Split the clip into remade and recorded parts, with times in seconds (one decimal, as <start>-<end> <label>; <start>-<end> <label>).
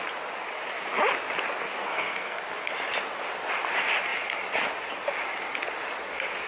0.0-1.8 recorded; 1.8-2.4 remade; 2.4-6.5 recorded